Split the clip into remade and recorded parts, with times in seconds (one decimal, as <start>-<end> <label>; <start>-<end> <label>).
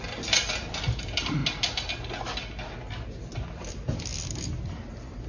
0.0-5.3 recorded